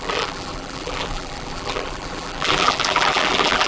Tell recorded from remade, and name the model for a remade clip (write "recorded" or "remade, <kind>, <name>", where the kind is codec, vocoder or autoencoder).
remade, vocoder, BigVGAN v2